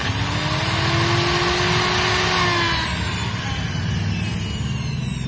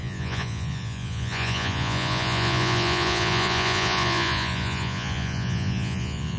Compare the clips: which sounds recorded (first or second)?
first